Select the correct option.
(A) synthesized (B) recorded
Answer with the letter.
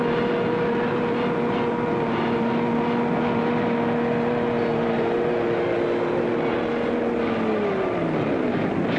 B